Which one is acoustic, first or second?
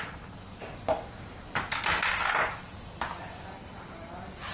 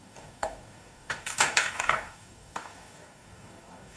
first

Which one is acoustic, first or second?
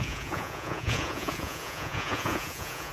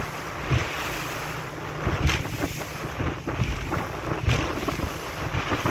second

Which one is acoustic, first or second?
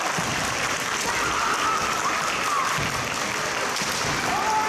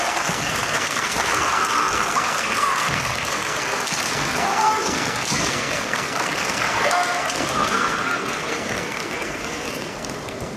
first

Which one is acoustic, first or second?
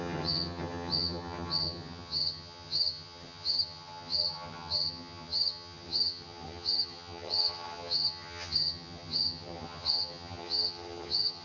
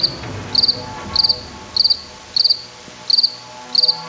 second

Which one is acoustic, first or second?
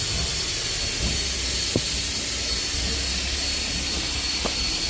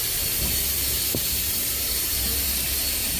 first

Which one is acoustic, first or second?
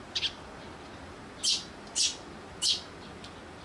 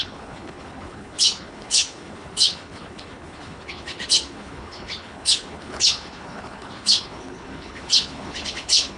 first